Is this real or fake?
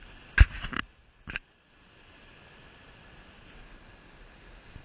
real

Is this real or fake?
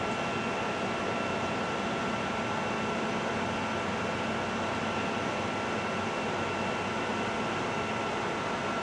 real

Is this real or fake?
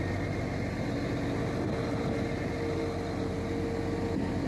real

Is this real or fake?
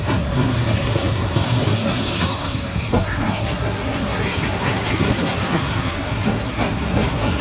fake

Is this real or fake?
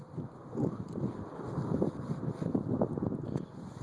real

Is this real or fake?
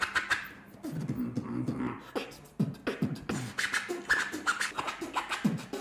real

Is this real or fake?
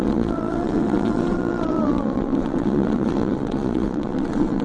fake